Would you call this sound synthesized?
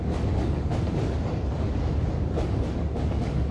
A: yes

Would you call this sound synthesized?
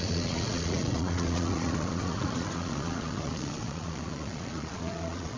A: yes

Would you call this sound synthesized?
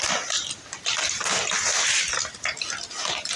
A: no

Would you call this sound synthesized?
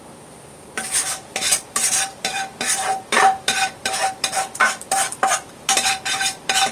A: yes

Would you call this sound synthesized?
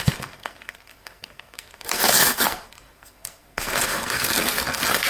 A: yes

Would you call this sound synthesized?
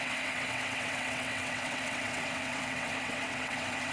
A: yes